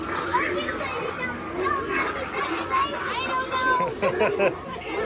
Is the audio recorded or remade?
recorded